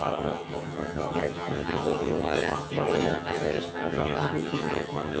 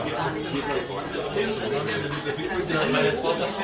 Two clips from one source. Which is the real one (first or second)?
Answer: second